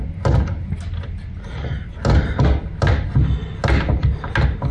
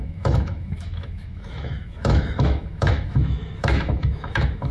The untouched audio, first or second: first